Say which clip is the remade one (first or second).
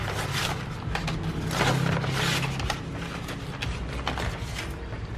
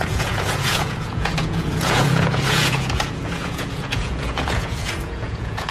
second